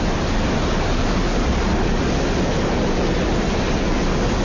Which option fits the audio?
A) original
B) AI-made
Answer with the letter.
A